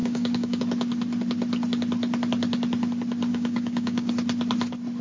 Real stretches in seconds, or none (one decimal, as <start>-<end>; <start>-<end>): 0.6-3.3; 4.1-5.0